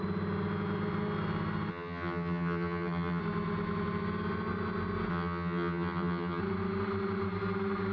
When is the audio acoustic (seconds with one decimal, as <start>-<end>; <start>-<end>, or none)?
0.0-1.7; 3.2-5.1; 6.4-7.9